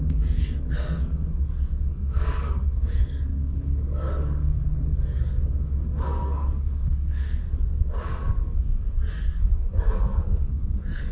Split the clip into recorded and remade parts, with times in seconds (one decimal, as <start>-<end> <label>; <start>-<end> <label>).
0.0-7.4 remade; 7.4-8.1 recorded; 8.1-11.1 remade